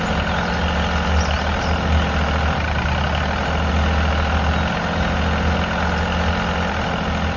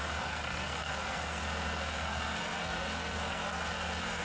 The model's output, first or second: second